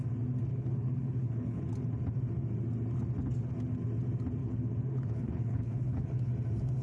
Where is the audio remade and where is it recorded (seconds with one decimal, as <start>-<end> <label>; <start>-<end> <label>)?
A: 0.0-0.5 recorded; 0.5-1.6 remade; 1.6-4.4 recorded; 4.4-6.3 remade; 6.3-6.8 recorded